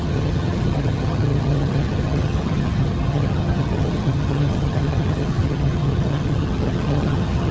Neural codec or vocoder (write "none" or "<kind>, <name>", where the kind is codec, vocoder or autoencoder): vocoder, HiFi-GAN